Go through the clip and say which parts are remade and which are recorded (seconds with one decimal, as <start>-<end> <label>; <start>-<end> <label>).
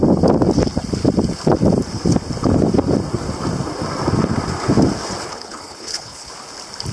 0.0-5.3 recorded; 5.3-6.3 remade; 6.3-6.9 recorded